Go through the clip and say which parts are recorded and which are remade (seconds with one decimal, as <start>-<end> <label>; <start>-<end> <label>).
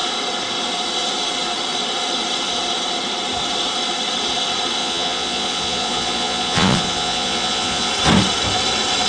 0.0-4.8 recorded; 4.8-7.9 remade; 7.9-9.1 recorded